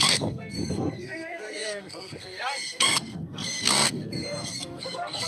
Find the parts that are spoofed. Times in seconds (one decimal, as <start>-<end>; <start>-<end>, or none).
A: 0.0-5.3